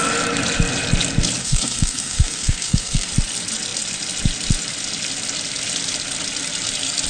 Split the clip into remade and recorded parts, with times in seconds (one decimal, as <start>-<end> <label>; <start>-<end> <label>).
0.0-1.4 recorded; 1.4-3.1 remade; 3.1-7.1 recorded